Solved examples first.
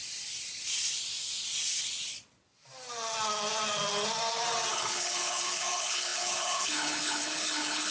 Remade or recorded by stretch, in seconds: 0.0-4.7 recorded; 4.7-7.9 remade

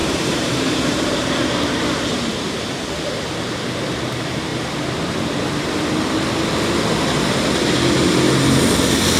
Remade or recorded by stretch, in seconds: 0.0-1.7 remade; 1.7-9.2 recorded